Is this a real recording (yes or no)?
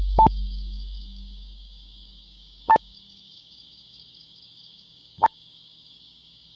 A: no